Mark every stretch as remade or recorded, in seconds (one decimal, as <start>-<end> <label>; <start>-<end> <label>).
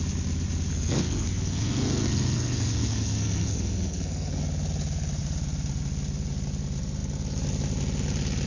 0.0-0.7 recorded; 0.7-4.4 remade; 4.4-8.5 recorded